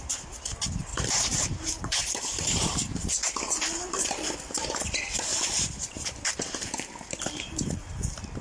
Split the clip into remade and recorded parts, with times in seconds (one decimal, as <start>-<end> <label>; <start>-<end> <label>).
0.0-0.9 recorded; 0.9-3.1 remade; 3.1-5.3 recorded; 5.3-7.8 remade; 7.8-8.4 recorded